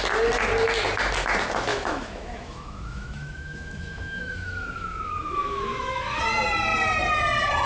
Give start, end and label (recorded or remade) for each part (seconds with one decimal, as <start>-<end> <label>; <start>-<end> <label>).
0.0-1.7 recorded; 1.7-6.2 remade; 6.2-7.7 recorded